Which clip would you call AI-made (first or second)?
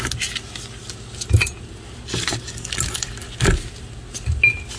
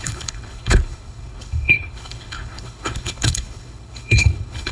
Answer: second